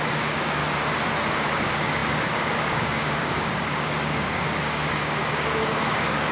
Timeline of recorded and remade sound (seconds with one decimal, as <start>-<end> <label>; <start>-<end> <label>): 0.0-0.6 remade; 0.6-1.3 recorded; 1.3-6.3 remade